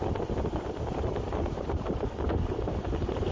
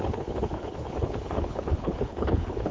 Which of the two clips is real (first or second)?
first